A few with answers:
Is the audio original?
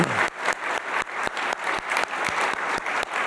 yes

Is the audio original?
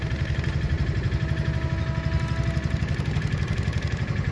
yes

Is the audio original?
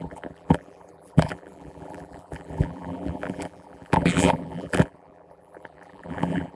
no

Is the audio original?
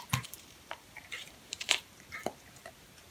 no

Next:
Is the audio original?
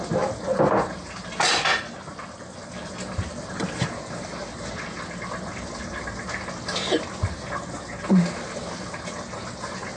yes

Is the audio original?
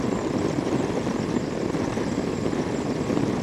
yes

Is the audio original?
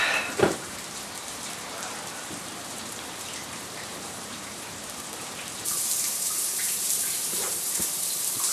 no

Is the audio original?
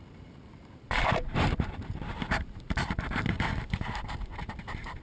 no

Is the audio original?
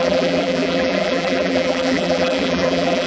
no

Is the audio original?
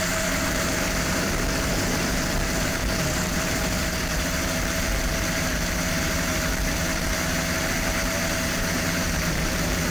no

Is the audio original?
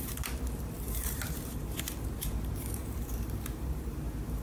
no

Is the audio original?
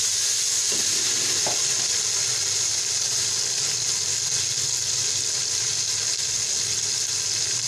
yes